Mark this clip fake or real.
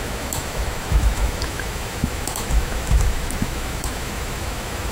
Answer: fake